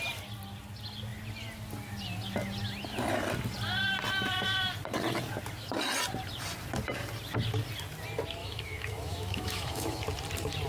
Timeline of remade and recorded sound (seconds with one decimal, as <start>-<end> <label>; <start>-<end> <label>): 0.0-8.4 recorded; 8.4-10.0 remade; 10.0-10.7 recorded